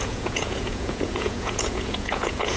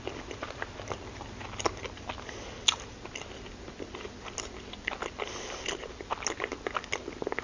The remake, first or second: first